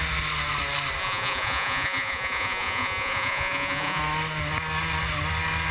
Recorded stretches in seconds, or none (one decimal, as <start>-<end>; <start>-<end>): 0.0-1.0; 4.0-5.7